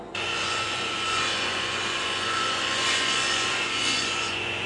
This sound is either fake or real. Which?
fake